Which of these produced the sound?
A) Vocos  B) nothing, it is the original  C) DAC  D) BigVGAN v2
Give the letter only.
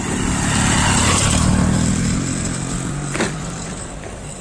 B